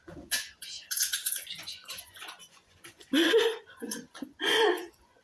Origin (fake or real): fake